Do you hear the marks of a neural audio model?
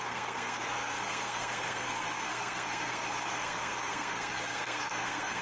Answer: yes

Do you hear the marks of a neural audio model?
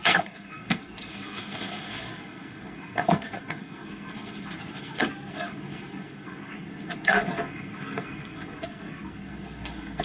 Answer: yes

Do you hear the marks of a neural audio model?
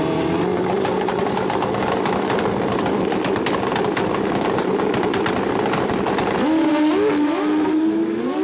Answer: no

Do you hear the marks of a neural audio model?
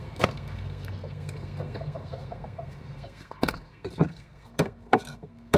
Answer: yes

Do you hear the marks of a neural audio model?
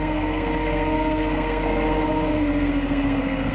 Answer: yes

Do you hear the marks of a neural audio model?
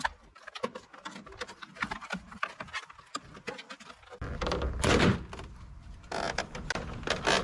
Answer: no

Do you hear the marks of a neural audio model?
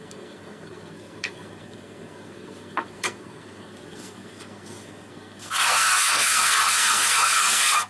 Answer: yes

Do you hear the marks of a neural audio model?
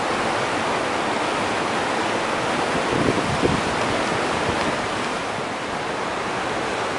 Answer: no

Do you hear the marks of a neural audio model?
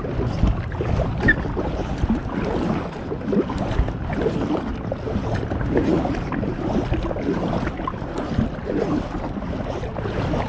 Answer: no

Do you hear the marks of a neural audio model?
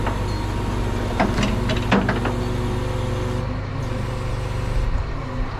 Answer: no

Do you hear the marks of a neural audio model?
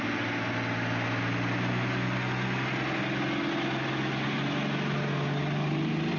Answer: no